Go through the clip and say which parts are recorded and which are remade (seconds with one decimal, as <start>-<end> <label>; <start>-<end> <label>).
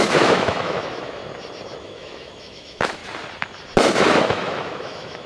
0.0-1.2 remade; 1.2-1.8 recorded; 1.8-3.0 remade; 3.0-4.2 recorded; 4.2-5.3 remade